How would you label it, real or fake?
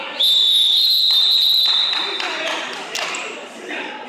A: fake